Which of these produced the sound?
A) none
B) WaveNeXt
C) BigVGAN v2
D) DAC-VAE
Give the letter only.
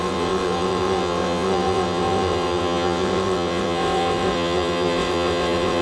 B